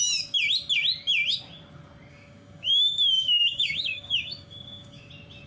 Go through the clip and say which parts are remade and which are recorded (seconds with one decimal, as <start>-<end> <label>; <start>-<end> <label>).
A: 0.0-2.1 recorded; 2.1-5.1 remade; 5.1-5.5 recorded